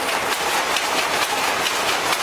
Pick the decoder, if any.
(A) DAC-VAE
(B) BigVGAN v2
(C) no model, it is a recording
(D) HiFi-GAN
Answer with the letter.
C